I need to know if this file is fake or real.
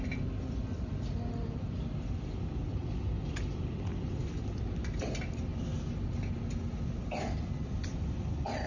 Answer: real